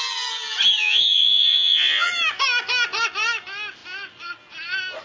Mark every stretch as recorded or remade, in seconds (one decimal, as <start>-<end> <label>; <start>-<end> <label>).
0.0-0.8 recorded; 0.8-2.1 remade; 2.1-5.0 recorded